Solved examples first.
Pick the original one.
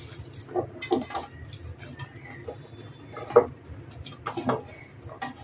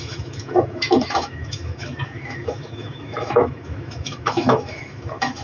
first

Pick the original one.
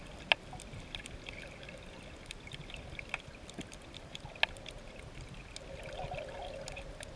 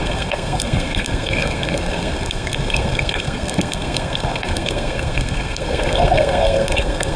first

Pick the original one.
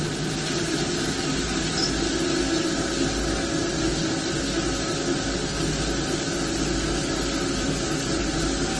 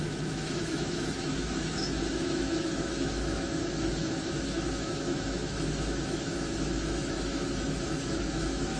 first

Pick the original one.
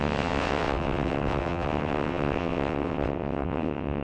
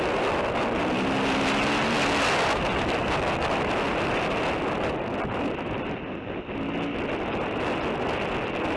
second